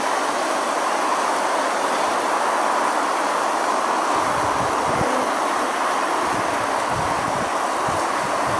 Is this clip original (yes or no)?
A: yes